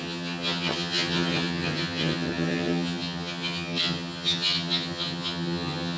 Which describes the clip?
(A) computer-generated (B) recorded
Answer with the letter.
A